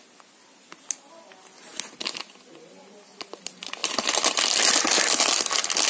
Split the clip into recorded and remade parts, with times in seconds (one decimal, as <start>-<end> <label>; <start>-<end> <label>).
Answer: 0.0-5.9 recorded